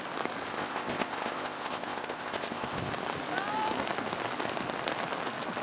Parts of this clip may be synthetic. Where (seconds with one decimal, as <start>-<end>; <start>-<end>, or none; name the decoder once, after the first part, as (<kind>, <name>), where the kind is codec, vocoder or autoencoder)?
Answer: 0.5-2.9 (codec, ZipCodec)